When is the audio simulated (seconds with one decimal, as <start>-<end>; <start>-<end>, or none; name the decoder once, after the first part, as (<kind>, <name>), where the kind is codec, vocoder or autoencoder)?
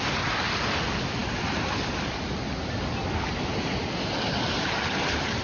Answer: none